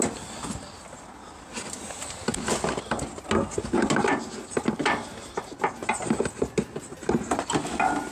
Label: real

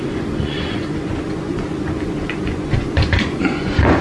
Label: fake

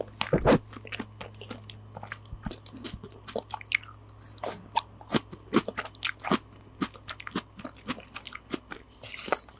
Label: real